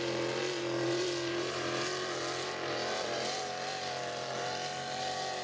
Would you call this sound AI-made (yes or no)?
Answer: yes